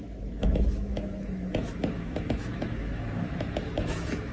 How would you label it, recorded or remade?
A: remade